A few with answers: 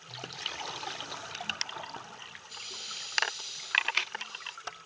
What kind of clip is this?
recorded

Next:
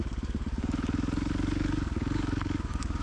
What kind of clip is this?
remade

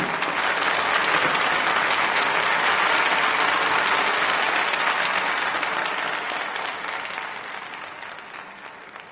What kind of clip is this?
recorded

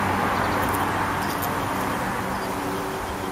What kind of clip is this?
recorded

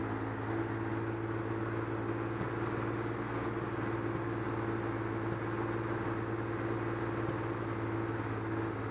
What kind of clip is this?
recorded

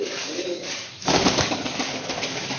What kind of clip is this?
remade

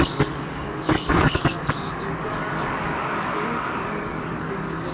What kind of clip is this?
remade